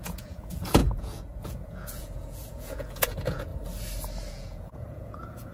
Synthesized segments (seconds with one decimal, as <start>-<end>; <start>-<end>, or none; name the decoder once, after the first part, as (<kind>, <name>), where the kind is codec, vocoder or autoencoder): 0.0-3.5 (vocoder, Vocos); 4.3-5.5